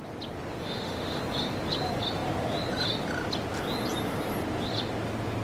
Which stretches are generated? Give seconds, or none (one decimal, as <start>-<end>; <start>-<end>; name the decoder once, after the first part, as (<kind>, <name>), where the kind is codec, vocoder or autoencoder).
0.6-1.2 (autoencoder, DAC-VAE)